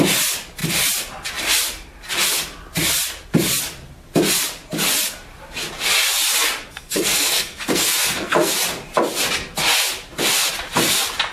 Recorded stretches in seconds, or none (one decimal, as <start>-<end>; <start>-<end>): 0.0-6.8; 8.5-11.3